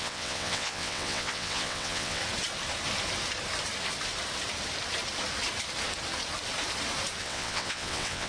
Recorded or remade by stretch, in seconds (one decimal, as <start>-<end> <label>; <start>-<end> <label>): 0.0-2.2 remade; 2.2-7.2 recorded; 7.2-8.3 remade